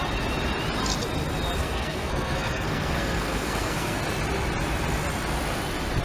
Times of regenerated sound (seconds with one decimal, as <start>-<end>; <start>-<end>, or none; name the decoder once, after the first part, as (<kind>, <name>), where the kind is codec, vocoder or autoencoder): 1.6-4.0 (codec, SNAC)